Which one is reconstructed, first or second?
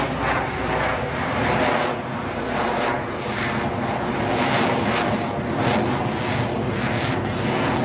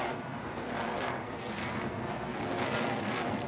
second